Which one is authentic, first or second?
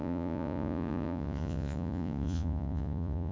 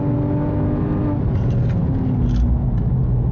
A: second